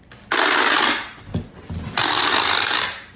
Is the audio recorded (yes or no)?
yes